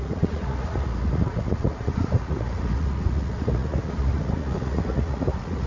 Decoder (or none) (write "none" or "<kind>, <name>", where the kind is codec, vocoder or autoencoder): vocoder, Vocos